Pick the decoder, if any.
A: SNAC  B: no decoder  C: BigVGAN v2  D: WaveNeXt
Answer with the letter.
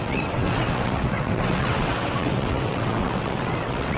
D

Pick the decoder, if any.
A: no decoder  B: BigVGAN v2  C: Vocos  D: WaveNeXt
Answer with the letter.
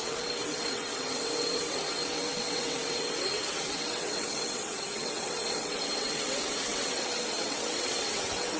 D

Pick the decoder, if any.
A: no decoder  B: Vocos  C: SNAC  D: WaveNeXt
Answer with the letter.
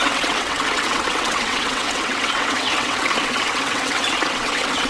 D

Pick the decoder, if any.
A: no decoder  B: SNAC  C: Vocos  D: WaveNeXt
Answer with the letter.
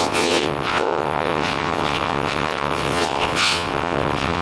D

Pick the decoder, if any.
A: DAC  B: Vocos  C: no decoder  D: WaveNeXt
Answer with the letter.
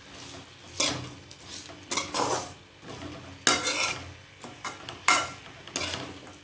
C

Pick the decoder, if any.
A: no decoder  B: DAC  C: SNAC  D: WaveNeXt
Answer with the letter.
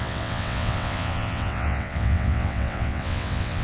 D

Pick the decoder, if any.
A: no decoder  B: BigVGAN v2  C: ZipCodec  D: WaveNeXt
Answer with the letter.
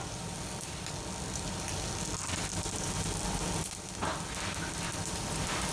A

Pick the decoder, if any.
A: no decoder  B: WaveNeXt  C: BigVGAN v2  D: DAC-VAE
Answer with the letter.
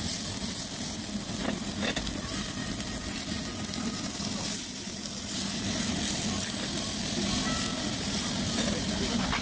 A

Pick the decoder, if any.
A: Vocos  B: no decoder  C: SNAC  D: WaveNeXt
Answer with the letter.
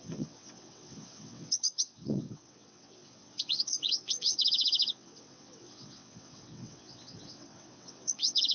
D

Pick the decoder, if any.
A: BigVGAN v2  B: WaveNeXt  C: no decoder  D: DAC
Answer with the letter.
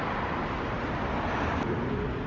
C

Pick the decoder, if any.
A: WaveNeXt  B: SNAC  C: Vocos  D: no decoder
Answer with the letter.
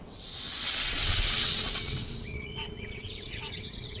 A